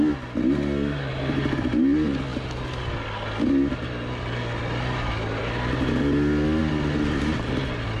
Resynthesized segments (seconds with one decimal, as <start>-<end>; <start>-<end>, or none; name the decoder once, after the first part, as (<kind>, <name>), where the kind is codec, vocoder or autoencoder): 1.1-1.8 (vocoder, BigVGAN v2)